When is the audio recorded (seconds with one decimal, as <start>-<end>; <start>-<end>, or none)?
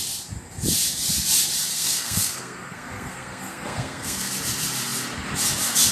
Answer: 0.0-1.7; 4.3-5.9